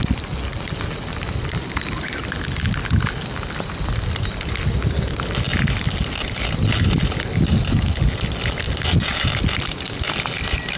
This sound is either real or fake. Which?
real